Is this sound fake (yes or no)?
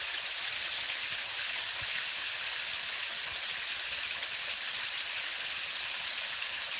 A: no